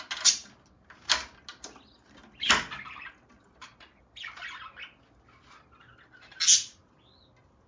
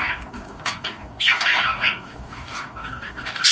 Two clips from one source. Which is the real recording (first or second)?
first